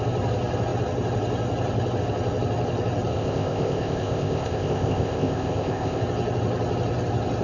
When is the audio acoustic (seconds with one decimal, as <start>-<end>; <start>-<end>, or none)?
0.0-3.1; 6.0-7.4